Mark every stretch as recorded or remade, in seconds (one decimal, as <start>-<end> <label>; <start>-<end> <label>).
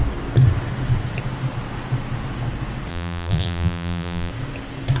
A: 0.0-2.9 recorded; 2.9-4.3 remade; 4.3-5.0 recorded